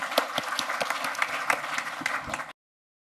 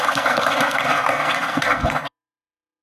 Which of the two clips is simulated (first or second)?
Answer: second